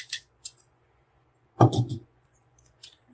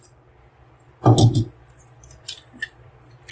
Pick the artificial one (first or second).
first